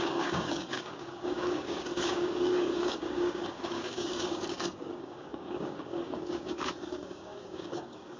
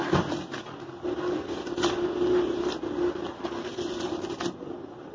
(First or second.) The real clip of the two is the second